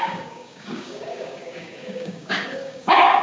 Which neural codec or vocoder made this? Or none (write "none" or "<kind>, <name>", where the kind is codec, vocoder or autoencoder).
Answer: codec, DAC